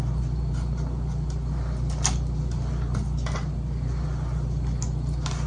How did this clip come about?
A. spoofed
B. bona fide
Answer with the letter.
B